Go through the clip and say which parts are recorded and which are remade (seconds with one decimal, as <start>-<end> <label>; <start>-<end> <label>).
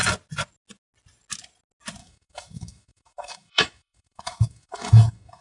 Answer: 0.0-2.0 recorded; 2.0-5.4 remade